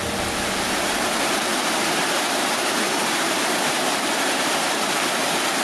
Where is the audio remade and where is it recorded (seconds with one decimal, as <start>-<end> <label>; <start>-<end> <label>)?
0.0-1.5 recorded; 1.5-4.9 remade; 4.9-5.6 recorded